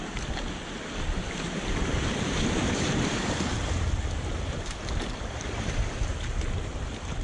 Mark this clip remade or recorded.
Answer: recorded